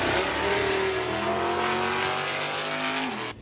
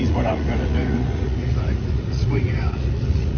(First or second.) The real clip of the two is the first